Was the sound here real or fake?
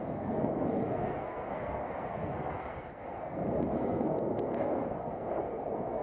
fake